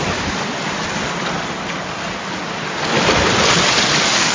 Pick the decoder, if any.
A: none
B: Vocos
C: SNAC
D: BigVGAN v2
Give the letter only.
A